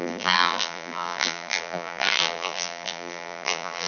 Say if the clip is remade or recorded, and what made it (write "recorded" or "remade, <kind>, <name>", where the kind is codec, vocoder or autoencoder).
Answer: remade, vocoder, BigVGAN v2